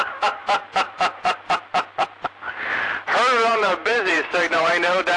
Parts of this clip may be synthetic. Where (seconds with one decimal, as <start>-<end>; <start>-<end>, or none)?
0.0-0.4; 3.5-5.2